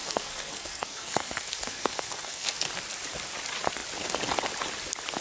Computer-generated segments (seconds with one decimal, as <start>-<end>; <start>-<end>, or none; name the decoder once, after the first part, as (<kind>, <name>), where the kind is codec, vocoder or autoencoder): 0.0-2.7 (codec, SNAC)

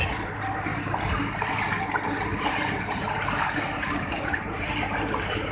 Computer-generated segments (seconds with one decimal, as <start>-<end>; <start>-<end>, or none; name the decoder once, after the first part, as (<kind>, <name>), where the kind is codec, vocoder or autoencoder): 0.7-1.2 (vocoder, BigVGAN v2); 2.3-5.5

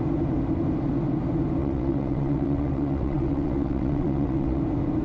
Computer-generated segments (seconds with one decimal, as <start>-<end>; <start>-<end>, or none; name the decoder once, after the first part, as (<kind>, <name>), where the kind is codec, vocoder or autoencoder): 1.6-4.6 (vocoder, WaveNeXt)

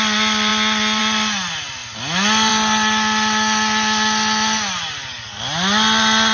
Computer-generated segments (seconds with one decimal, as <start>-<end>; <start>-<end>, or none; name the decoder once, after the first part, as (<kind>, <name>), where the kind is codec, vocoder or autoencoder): none